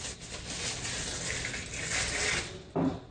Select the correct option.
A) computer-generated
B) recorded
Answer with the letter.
B